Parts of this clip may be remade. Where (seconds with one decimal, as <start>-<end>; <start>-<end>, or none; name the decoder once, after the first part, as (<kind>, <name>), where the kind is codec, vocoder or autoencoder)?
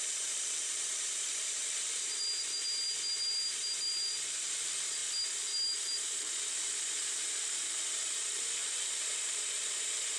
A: 0.0-2.0 (vocoder, BigVGAN v2); 4.5-5.0; 6.6-10.2